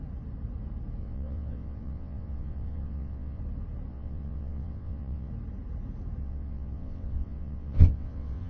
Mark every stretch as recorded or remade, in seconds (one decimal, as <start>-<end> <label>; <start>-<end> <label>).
0.0-1.0 recorded; 1.0-3.4 remade; 3.4-3.9 recorded; 3.9-5.3 remade; 5.3-6.2 recorded; 6.2-8.5 remade

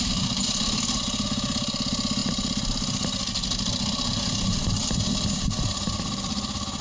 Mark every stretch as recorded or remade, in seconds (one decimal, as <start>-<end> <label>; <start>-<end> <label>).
0.0-6.8 recorded

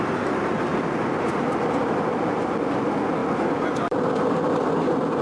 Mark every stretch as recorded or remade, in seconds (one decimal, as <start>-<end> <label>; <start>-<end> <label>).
0.0-0.7 recorded; 0.7-2.7 remade; 2.7-3.2 recorded; 3.2-4.7 remade; 4.7-5.2 recorded